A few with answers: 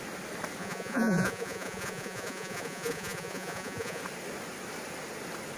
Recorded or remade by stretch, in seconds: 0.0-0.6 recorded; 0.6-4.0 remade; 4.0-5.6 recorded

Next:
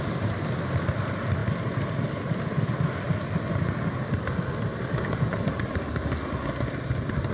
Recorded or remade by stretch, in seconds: 0.0-7.3 recorded

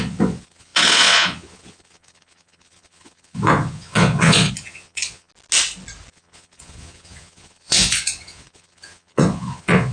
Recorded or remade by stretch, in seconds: 0.0-5.3 remade; 5.3-6.1 recorded; 6.1-9.9 remade

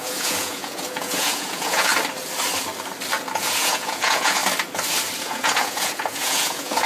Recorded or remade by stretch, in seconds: 0.0-1.9 remade; 1.9-3.3 recorded; 3.3-4.4 remade; 4.4-5.2 recorded; 5.2-6.9 remade

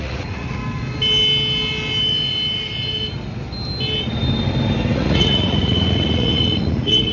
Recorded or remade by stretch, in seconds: 0.0-0.6 remade; 0.6-4.9 recorded; 4.9-7.1 remade

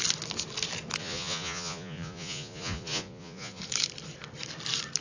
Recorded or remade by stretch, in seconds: 0.0-1.0 recorded; 1.0-3.6 remade; 3.6-5.0 recorded

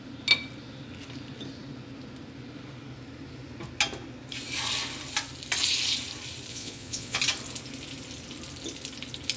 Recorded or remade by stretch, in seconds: 0.0-6.5 recorded; 6.5-7.2 remade; 7.2-9.4 recorded